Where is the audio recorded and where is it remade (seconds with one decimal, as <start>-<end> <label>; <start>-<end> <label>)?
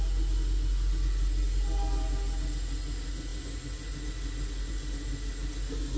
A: 0.0-6.0 recorded